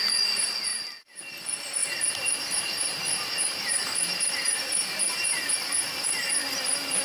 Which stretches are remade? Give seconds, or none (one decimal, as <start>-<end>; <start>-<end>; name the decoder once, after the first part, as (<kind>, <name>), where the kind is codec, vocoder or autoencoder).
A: 0.7-1.2 (vocoder, BigVGAN v2); 1.8-5.5